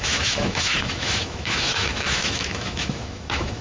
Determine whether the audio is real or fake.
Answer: fake